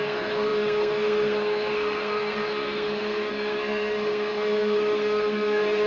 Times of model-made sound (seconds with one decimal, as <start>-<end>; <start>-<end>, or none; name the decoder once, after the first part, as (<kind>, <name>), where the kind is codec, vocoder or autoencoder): 0.0-5.9 (codec, SNAC)